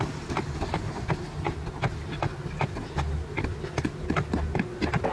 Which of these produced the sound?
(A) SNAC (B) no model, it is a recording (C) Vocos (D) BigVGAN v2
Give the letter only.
B